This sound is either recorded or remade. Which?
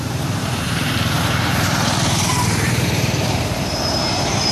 remade